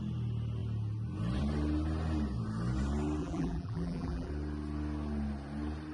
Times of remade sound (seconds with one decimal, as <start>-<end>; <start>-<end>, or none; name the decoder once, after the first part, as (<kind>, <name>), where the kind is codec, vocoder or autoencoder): 3.2-4.3 (vocoder, BigVGAN v2)

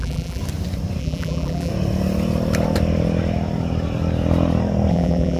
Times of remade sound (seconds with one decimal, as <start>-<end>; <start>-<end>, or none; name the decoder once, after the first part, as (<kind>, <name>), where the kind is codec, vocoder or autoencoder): 0.0-0.4 (vocoder, BigVGAN v2); 1.0-1.7; 4.9-5.4